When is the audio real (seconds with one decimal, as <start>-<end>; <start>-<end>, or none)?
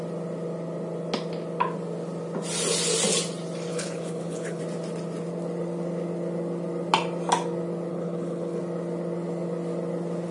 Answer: 0.0-3.7; 4.6-7.9; 8.6-10.3